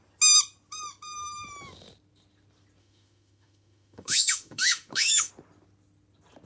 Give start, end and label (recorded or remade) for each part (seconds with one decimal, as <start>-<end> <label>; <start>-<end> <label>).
0.0-2.8 recorded; 2.8-5.3 remade; 5.3-6.5 recorded